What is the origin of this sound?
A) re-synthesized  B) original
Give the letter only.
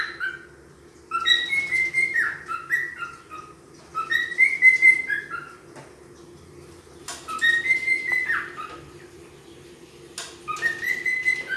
B